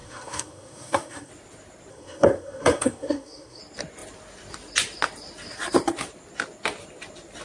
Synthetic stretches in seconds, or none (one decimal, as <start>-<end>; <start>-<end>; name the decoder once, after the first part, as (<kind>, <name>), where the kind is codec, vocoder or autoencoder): 0.0-1.3 (codec, SNAC); 1.9-3.6